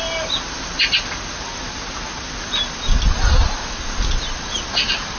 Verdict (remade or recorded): recorded